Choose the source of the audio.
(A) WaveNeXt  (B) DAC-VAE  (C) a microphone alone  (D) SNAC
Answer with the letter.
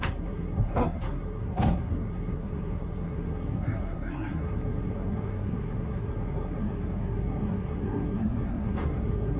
D